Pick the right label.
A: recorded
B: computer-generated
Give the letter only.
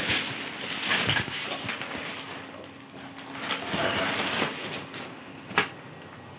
A